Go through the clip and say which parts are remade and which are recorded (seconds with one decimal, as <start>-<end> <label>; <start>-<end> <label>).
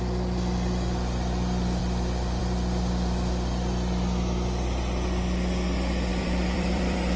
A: 0.0-6.1 recorded; 6.1-7.2 remade